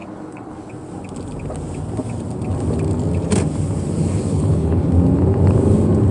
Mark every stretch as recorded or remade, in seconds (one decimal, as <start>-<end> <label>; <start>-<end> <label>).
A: 0.0-0.7 remade; 0.7-4.3 recorded; 4.3-4.9 remade; 4.9-6.1 recorded